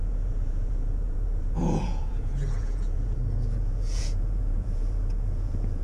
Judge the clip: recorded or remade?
remade